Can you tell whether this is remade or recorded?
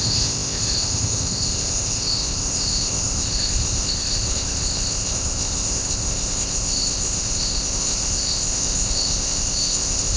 remade